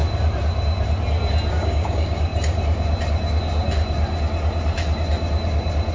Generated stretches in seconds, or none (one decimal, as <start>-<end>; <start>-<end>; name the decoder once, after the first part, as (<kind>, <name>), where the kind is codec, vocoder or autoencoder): 1.5-2.3 (codec, DAC)

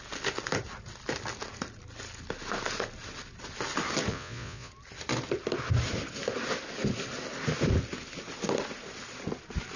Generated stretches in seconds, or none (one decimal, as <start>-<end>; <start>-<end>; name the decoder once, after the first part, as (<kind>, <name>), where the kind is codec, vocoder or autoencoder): 4.1-4.7 (vocoder, Vocos)

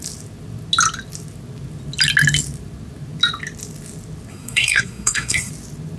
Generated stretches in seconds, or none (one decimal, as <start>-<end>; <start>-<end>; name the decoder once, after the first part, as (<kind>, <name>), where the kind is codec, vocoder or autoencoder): 4.3-5.5 (codec, SNAC)